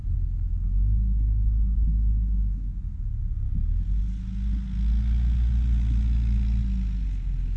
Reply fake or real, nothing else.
real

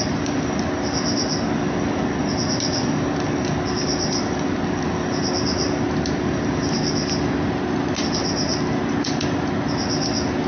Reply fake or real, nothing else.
real